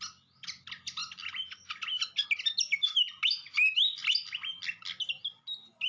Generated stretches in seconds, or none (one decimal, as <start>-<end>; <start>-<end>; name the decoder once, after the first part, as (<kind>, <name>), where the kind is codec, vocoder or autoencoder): none